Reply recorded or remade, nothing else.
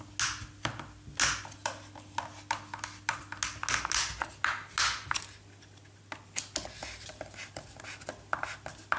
recorded